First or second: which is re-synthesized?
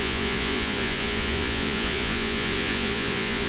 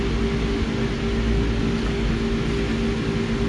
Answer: first